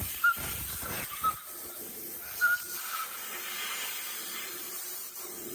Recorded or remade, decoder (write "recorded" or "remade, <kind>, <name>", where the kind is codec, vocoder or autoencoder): remade, vocoder, BigVGAN v2